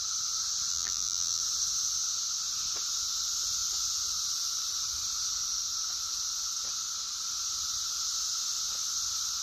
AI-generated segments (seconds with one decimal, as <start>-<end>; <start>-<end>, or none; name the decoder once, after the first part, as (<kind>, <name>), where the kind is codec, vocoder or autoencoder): 0.7-1.4 (vocoder, BigVGAN v2)